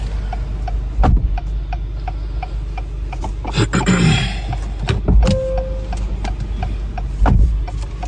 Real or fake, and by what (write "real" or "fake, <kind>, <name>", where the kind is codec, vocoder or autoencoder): real